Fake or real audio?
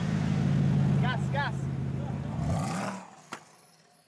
real